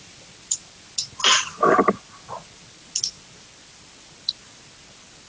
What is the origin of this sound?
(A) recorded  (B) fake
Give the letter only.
A